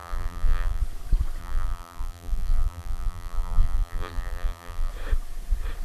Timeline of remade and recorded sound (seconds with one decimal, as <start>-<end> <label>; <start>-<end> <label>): 0.0-0.8 remade; 0.8-1.4 recorded; 1.4-4.9 remade; 4.9-5.8 recorded